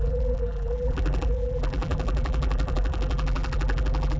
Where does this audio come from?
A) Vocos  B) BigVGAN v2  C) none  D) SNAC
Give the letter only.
B